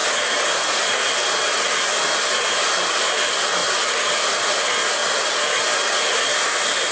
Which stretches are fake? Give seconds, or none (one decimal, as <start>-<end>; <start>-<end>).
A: none